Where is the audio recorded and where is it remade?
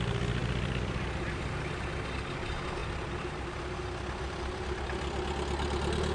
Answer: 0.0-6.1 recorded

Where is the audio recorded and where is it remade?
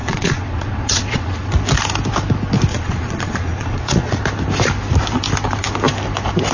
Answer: 0.0-1.5 remade; 1.5-2.7 recorded; 2.7-4.2 remade; 4.2-6.5 recorded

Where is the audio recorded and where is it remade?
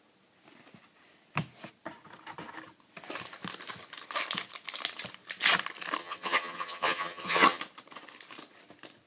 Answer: 0.0-6.0 recorded; 6.0-7.6 remade; 7.6-9.1 recorded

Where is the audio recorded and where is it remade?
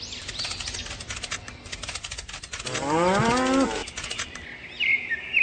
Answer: 0.0-5.4 recorded